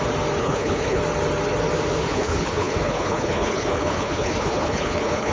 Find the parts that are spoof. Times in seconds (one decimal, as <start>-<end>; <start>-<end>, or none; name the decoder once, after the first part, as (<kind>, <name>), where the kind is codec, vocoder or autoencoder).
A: 0.4-1.0 (codec, HILCodec); 2.0-5.3